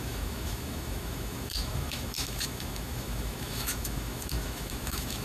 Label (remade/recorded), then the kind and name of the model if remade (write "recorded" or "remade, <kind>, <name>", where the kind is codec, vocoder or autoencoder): remade, autoencoder, DAC-VAE